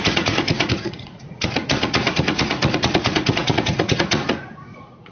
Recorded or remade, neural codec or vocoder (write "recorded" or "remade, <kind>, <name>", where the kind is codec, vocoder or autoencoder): remade, vocoder, Vocos